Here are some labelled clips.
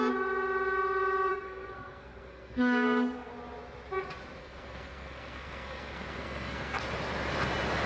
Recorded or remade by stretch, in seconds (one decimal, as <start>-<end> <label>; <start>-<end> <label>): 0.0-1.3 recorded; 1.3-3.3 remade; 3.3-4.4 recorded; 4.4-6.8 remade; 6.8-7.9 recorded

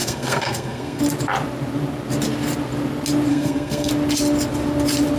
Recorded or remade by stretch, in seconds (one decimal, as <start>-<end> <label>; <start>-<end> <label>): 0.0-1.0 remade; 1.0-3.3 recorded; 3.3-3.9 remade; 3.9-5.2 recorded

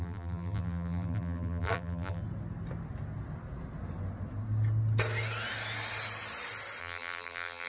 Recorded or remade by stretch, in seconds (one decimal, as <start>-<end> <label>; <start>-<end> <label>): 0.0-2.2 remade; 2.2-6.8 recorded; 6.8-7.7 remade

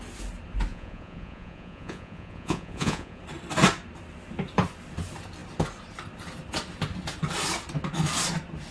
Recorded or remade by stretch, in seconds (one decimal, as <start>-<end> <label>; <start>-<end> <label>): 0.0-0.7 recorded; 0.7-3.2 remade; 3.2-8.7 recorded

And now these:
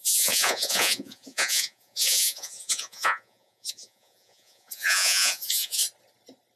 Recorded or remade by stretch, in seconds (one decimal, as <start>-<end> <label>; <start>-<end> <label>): 0.0-5.8 remade; 5.8-6.6 recorded

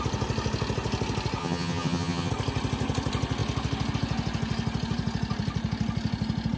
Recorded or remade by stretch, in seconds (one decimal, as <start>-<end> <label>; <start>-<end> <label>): 0.0-1.4 recorded; 1.4-2.3 remade; 2.3-6.6 recorded

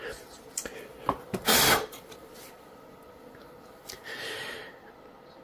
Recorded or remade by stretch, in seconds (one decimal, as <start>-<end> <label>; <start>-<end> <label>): 0.0-1.5 recorded; 1.5-2.3 remade; 2.3-5.4 recorded